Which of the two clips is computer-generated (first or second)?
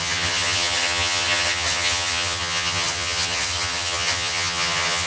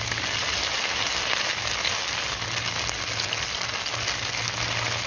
first